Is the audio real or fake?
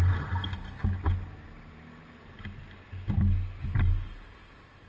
real